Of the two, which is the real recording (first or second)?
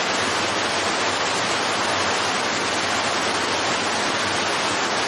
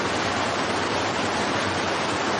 first